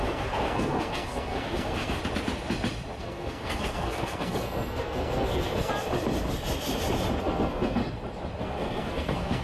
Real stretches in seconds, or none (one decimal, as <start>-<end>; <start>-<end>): 2.0-3.0; 5.7-7.2; 7.8-8.4